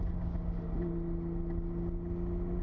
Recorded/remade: recorded